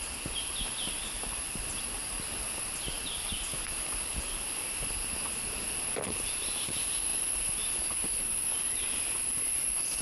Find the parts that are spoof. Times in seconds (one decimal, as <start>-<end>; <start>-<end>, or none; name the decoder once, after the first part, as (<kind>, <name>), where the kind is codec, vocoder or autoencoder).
0.0-10.0 (vocoder, BigVGAN v2)